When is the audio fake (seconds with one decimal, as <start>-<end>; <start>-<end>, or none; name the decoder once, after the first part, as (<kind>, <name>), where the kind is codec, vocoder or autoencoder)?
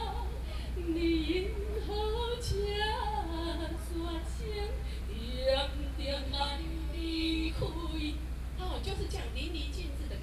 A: 6.1-7.5 (codec, SNAC)